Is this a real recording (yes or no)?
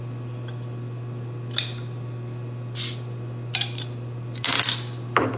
yes